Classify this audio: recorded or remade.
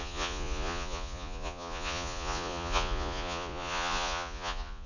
remade